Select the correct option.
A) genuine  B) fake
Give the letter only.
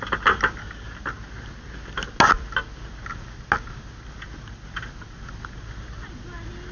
A